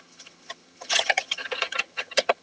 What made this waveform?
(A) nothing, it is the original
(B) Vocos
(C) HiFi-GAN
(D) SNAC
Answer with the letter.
C